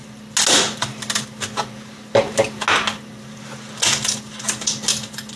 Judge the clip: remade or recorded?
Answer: recorded